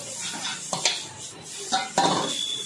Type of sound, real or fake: real